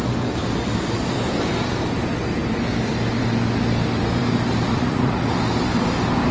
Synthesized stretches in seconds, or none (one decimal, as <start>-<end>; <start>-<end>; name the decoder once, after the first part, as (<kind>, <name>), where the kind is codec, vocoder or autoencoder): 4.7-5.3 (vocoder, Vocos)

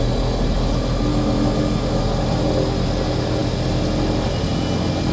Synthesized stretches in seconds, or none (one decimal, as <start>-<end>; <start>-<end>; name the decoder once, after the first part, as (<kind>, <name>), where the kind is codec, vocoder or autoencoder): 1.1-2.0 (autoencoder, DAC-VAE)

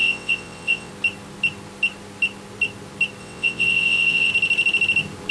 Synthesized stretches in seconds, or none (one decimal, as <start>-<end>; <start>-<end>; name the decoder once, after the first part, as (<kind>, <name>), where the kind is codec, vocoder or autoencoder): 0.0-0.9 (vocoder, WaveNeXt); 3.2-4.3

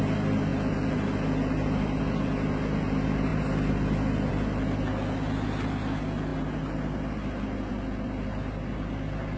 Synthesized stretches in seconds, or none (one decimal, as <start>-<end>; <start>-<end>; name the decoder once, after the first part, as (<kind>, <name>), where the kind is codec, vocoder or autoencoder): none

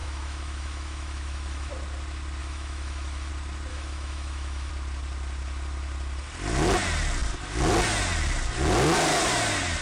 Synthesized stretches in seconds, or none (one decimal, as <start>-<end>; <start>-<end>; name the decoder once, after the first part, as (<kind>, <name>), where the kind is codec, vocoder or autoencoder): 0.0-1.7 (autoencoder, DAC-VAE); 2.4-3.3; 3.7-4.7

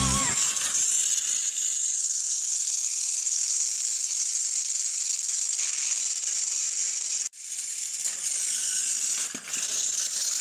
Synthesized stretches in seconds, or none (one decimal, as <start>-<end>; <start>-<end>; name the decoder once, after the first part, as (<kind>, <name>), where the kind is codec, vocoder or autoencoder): 2.0-6.0 (codec, SNAC)

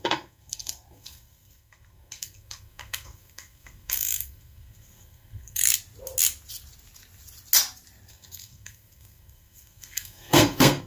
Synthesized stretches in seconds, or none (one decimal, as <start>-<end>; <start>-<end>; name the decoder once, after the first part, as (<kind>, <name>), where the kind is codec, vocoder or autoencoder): 0.0-5.6 (codec, SNAC); 8.1-10.9